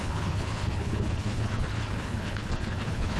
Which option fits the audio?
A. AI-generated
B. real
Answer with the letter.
A